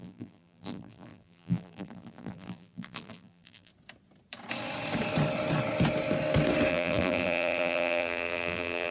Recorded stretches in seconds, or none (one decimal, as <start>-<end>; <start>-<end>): 3.7-6.7

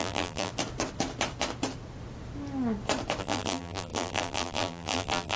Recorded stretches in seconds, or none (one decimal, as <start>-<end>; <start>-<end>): 0.5-3.2

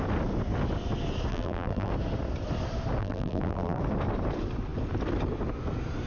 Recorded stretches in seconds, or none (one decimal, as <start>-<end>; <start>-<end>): 0.0-1.3; 1.9-3.0; 3.8-6.1

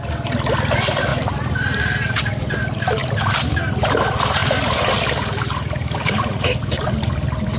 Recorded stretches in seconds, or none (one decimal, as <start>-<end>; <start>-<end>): 0.0-1.1; 2.2-3.0; 3.9-4.4; 6.6-7.6